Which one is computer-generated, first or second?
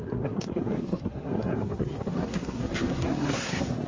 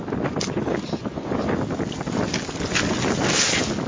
first